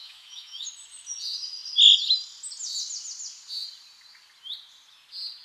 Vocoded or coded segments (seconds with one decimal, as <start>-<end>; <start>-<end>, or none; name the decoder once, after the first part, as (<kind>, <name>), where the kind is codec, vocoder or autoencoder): 0.0-0.7 (autoencoder, DAC-VAE)